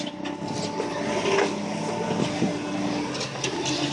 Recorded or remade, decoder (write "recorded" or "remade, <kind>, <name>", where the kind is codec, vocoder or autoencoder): recorded